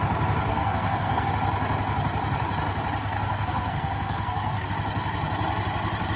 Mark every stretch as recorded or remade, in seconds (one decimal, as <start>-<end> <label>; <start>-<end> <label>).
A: 0.0-0.5 recorded; 0.5-1.3 remade; 1.3-3.0 recorded; 3.0-4.7 remade; 4.7-6.2 recorded

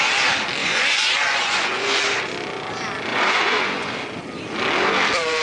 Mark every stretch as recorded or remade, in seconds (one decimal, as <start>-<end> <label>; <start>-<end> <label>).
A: 0.0-0.6 recorded; 0.6-2.0 remade; 2.0-3.1 recorded; 3.1-3.9 remade; 3.9-5.4 recorded

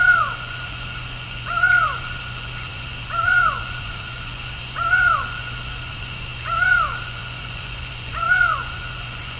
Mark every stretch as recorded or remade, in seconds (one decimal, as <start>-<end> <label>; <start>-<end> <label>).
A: 0.0-9.4 remade

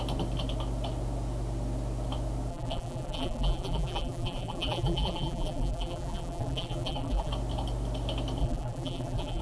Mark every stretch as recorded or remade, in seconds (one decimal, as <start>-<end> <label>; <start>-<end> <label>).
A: 0.0-2.5 recorded; 2.5-7.3 remade; 7.3-8.4 recorded; 8.4-9.4 remade

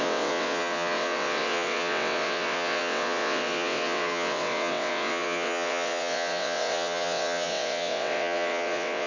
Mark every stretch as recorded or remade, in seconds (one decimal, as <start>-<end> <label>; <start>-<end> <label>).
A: 0.0-9.1 remade

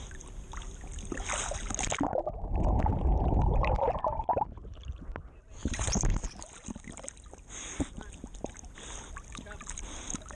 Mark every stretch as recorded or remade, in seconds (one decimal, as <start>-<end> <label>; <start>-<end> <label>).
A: 0.0-10.3 recorded

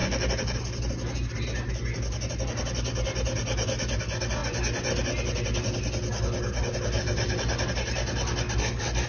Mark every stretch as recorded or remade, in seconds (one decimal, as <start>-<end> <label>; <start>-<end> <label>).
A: 0.0-9.1 recorded